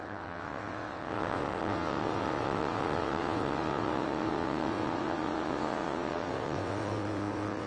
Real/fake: fake